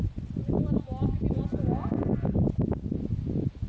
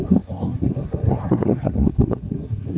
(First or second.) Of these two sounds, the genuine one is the first